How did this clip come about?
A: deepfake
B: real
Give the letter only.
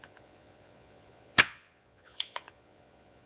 A